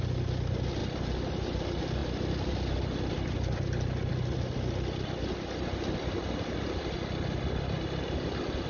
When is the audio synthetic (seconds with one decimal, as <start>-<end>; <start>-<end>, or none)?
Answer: none